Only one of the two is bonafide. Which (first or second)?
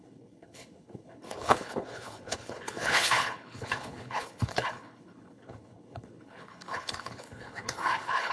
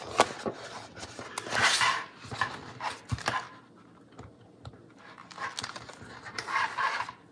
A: second